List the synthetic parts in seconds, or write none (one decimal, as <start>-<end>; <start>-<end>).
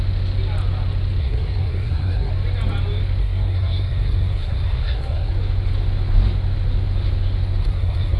1.2-2.3; 3.2-5.3; 7.6-8.2